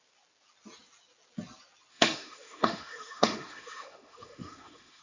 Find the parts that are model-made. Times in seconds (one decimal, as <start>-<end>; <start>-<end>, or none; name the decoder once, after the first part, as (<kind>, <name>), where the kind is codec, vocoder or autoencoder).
1.9-5.0 (autoencoder, DAC-VAE)